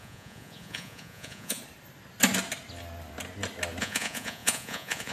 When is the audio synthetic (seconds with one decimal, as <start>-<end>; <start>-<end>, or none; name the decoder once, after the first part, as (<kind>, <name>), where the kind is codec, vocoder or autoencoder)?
0.0-1.6 (vocoder, Vocos); 3.8-5.1